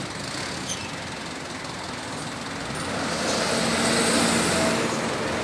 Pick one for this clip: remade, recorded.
recorded